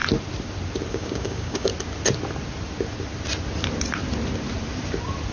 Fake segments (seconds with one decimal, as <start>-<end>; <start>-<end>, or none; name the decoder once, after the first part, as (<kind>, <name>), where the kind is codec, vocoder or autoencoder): 0.9-1.7 (codec, DAC)